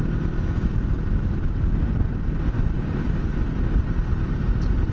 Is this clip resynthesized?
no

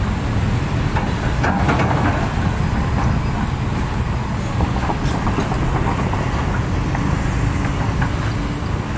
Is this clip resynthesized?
no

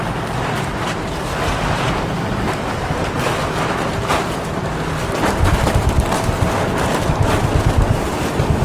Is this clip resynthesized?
yes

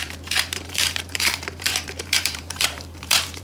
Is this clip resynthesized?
yes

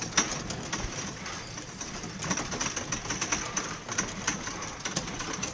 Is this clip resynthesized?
no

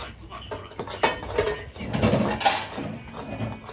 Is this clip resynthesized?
no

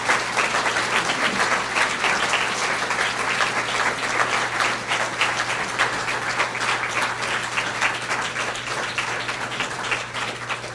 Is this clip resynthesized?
no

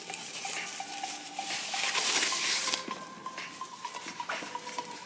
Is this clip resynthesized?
yes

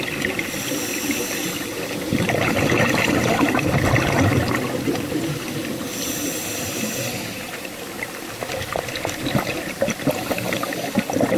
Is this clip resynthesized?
no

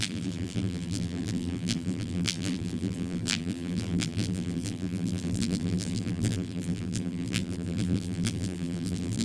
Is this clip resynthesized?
yes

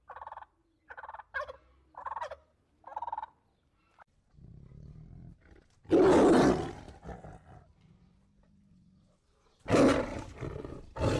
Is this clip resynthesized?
no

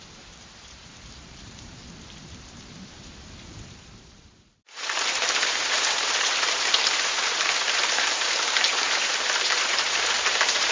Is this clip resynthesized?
yes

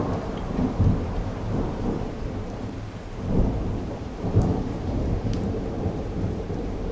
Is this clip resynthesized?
yes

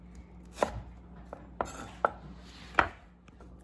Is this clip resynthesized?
no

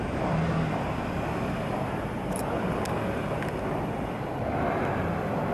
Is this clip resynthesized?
no